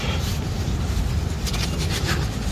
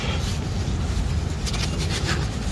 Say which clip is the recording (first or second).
second